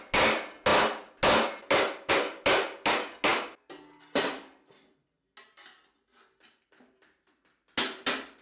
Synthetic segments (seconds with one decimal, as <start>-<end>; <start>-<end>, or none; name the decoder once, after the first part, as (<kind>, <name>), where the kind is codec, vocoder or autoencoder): none